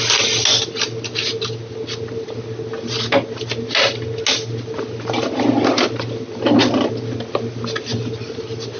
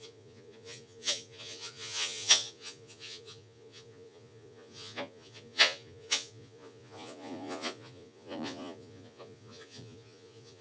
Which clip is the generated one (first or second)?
second